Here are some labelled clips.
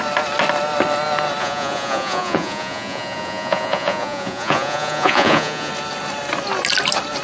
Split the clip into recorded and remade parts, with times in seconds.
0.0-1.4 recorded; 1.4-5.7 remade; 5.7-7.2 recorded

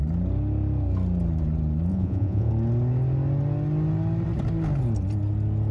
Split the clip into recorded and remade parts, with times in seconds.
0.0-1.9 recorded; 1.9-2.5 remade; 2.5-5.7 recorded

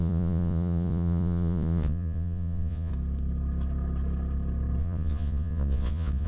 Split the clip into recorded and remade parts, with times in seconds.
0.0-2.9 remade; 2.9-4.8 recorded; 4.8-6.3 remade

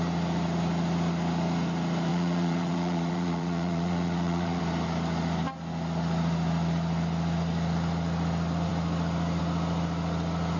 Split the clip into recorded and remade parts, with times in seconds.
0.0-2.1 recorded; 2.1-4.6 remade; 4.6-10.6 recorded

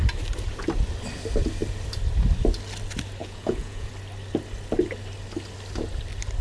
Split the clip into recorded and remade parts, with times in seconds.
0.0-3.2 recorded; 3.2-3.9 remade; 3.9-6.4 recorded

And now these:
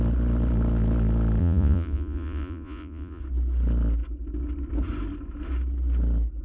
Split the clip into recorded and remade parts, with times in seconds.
0.0-1.4 recorded; 1.4-3.2 remade; 3.2-6.4 recorded

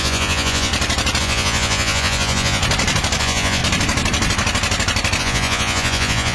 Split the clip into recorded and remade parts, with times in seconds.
0.0-0.7 remade; 0.7-1.2 recorded; 1.2-2.6 remade; 2.6-3.2 recorded; 3.2-3.6 remade; 3.6-5.2 recorded; 5.2-6.3 remade

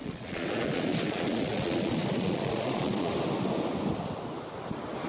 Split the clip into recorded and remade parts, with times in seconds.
0.0-3.1 remade; 3.1-5.1 recorded